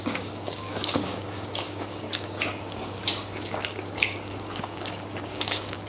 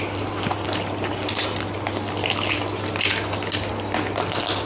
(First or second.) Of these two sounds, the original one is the second